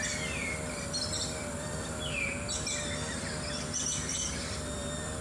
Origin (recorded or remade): remade